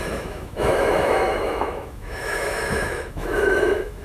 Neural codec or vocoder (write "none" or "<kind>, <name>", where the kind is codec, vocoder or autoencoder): autoencoder, DAC-VAE